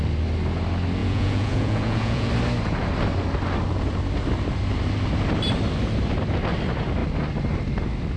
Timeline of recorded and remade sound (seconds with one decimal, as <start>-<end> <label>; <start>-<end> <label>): 0.0-1.0 recorded; 1.0-2.3 remade; 2.3-8.2 recorded